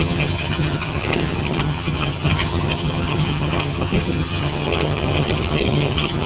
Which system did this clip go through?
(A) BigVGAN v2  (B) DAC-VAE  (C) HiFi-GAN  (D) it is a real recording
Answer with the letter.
C